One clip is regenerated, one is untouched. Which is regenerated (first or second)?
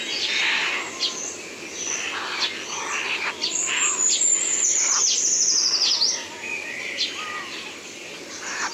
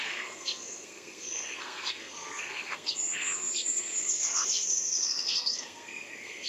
second